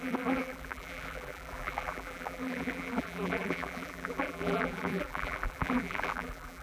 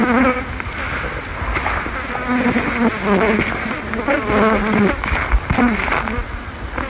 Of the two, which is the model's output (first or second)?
first